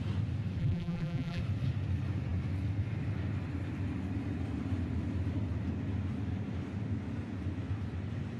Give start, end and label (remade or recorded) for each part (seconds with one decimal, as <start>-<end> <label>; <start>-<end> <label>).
0.0-0.6 recorded; 0.6-1.4 remade; 1.4-8.4 recorded